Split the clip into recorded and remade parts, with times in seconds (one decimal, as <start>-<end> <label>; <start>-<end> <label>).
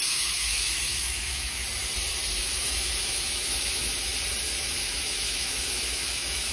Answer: 0.0-1.6 remade; 1.6-2.4 recorded; 2.4-4.1 remade; 4.1-4.6 recorded; 4.6-6.5 remade